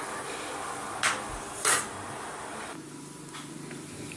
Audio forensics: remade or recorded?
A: recorded